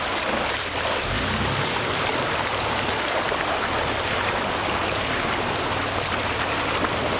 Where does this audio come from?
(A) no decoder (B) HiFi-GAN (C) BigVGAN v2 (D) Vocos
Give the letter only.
A